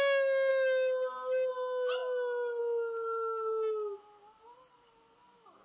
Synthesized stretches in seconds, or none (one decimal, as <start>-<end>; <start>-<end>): none